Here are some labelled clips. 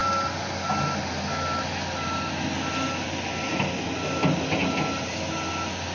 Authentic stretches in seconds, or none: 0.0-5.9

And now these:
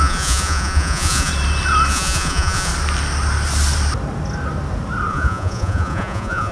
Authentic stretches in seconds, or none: 1.3-1.9; 2.7-5.1

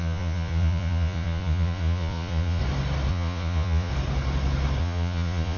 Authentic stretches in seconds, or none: 2.6-3.1; 3.9-4.8

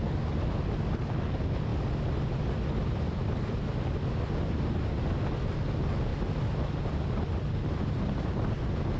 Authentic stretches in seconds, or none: 0.0-9.0

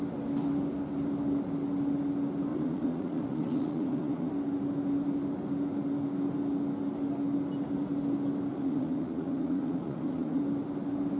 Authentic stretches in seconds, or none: 0.0-2.5; 4.3-8.5; 10.4-11.2

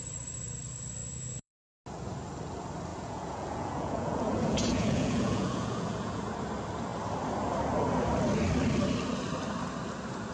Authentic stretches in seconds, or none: 0.0-1.0; 1.8-2.9; 6.2-10.3

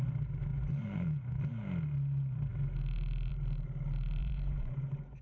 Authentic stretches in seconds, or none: 0.0-0.5; 1.4-4.2